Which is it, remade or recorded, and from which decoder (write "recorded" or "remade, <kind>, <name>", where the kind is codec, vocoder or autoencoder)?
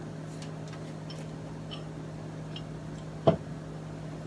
recorded